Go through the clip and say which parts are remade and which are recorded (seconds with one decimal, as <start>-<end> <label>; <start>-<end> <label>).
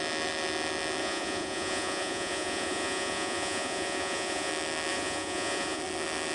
0.0-1.0 recorded; 1.0-4.5 remade; 4.5-4.9 recorded; 4.9-5.8 remade; 5.8-6.3 recorded